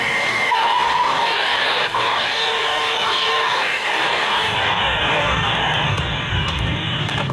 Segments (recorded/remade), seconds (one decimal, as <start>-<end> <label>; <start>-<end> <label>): 0.0-7.3 remade